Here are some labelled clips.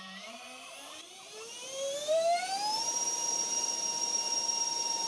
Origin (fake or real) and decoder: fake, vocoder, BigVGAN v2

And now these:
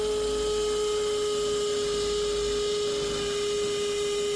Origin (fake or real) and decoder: real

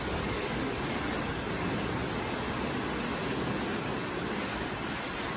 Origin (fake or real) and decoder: real